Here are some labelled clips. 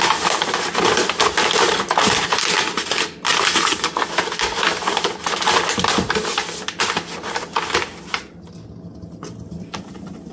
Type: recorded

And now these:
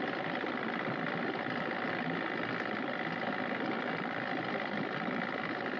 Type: recorded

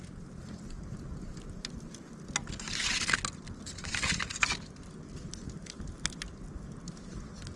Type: recorded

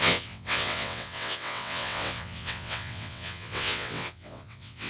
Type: remade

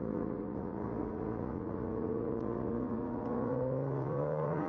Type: remade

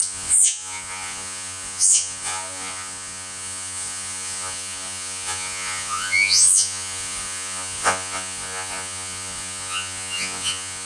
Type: remade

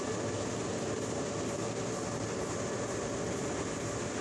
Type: recorded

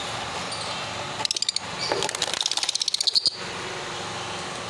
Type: recorded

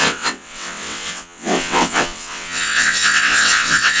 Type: remade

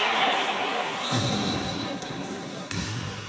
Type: remade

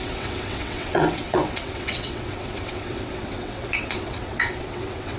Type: remade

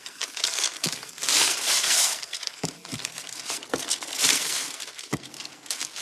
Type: remade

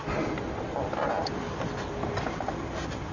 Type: recorded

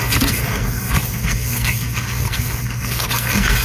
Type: remade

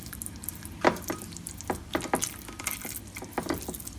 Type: recorded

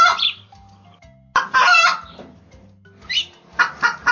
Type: recorded